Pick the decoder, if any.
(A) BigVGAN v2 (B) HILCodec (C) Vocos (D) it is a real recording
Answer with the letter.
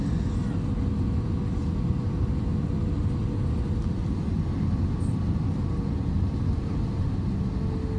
D